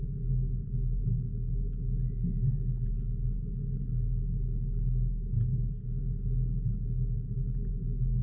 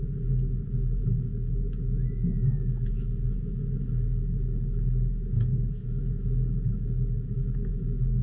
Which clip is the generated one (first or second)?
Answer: second